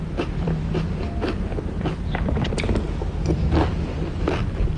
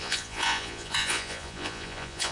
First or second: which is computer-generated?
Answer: second